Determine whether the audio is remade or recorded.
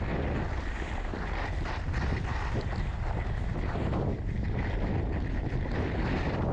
recorded